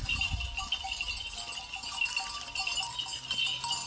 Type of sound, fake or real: real